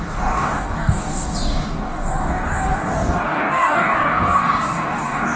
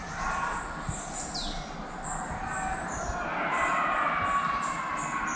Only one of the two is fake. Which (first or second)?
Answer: first